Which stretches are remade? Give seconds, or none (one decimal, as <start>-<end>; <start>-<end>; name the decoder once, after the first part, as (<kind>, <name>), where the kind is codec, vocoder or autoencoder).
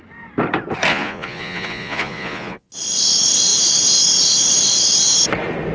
0.9-2.7 (vocoder, Vocos)